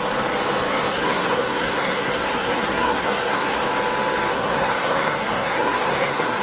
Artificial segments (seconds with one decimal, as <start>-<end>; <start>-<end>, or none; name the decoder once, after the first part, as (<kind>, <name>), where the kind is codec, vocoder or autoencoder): 0.9-3.6 (codec, SNAC); 4.3-6.4